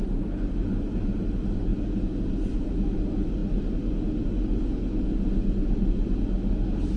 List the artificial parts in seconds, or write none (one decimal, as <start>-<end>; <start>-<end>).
none